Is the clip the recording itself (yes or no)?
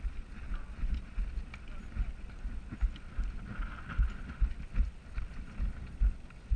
yes